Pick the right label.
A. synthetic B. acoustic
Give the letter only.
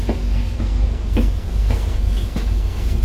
A